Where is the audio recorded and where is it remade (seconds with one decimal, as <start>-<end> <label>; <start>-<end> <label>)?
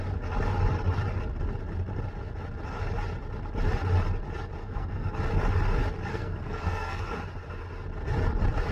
0.0-4.6 recorded; 4.6-5.1 remade; 5.1-6.1 recorded; 6.1-7.0 remade; 7.0-8.7 recorded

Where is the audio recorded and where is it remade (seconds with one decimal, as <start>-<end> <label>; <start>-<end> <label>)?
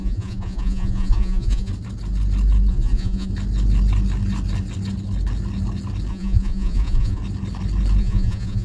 0.0-1.7 remade; 1.7-2.7 recorded; 2.7-3.3 remade; 3.3-6.1 recorded; 6.1-7.2 remade; 7.2-8.0 recorded; 8.0-8.6 remade